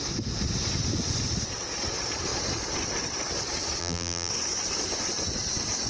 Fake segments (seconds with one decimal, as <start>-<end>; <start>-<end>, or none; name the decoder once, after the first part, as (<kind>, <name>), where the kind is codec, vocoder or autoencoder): 3.8-4.3 (vocoder, BigVGAN v2)